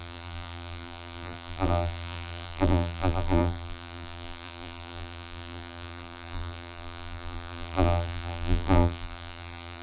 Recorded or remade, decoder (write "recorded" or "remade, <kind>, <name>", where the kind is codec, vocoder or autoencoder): remade, vocoder, BigVGAN v2